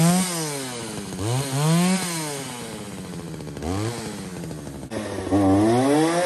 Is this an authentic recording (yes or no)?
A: yes